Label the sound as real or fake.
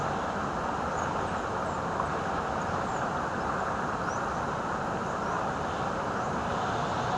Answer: real